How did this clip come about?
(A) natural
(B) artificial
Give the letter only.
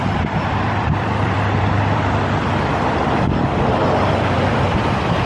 B